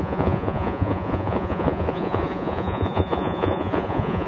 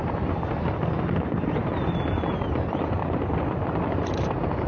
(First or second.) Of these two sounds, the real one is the second